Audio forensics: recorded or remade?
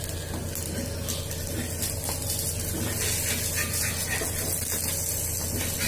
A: recorded